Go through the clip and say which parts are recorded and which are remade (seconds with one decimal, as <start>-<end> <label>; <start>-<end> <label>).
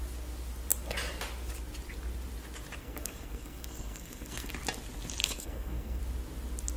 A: 0.0-2.8 recorded; 2.8-4.5 remade; 4.5-5.2 recorded; 5.2-6.0 remade; 6.0-6.8 recorded